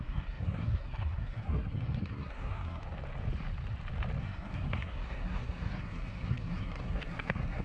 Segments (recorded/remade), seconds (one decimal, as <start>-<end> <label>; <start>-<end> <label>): 0.0-2.8 remade; 2.8-4.2 recorded; 4.2-7.6 remade